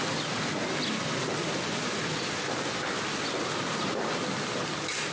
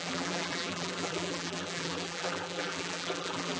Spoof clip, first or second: second